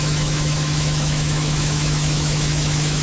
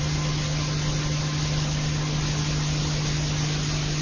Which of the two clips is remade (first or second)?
first